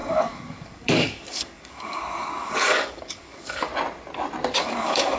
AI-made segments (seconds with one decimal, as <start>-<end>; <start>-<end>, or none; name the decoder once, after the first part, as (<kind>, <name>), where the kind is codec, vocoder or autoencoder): 0.0-3.7 (codec, DAC); 4.6-5.2